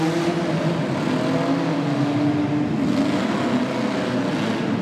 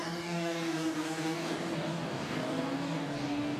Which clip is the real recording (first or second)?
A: first